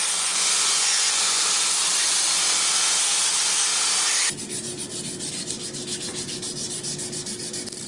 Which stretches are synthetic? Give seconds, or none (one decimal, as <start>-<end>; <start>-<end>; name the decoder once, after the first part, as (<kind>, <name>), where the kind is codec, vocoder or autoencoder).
0.0-1.4 (vocoder, Vocos)